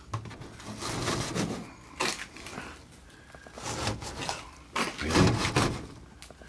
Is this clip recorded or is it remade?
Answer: recorded